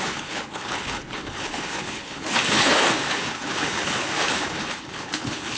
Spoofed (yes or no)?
yes